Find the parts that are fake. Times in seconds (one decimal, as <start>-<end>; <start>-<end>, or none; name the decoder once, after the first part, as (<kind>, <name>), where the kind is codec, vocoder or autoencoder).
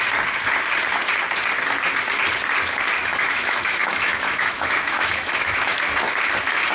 3.0-5.8 (autoencoder, DAC-VAE)